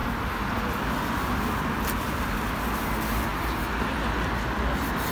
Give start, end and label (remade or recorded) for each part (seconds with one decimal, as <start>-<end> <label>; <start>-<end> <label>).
0.0-5.1 recorded